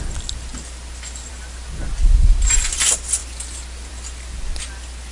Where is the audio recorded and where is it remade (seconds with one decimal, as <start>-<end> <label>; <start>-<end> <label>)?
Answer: 0.0-5.1 recorded